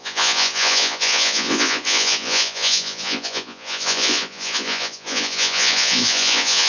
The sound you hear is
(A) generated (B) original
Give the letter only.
A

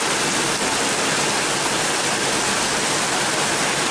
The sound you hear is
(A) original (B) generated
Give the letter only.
A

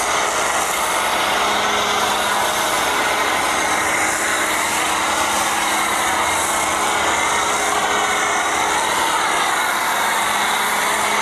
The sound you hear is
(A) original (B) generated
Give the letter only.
A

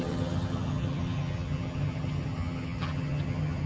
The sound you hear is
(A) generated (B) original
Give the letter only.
A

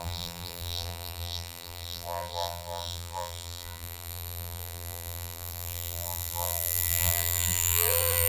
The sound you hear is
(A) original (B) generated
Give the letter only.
B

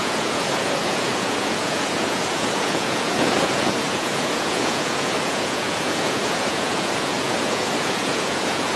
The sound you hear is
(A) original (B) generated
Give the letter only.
B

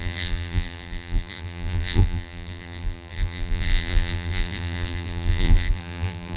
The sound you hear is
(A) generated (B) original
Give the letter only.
A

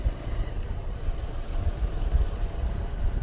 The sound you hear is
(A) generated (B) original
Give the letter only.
B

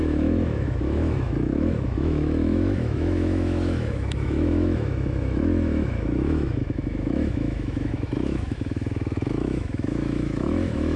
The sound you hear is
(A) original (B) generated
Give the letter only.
B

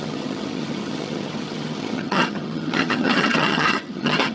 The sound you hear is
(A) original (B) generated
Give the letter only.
B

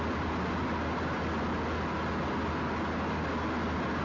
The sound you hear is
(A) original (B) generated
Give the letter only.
A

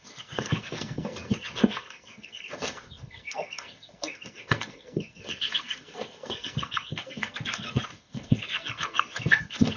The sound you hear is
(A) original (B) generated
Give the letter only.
B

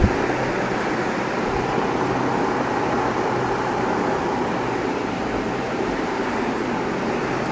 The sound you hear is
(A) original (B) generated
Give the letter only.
A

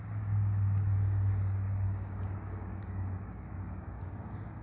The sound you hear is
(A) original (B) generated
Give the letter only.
B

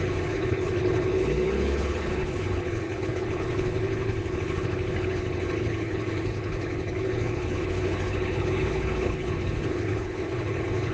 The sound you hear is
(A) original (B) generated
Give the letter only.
B